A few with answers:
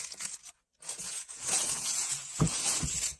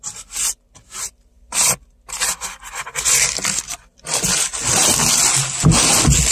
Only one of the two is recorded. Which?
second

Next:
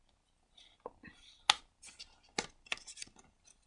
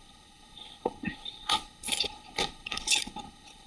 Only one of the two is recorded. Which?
first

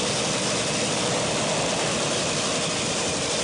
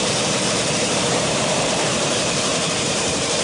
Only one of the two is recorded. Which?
first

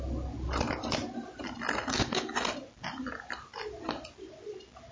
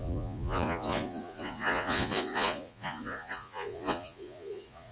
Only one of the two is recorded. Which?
first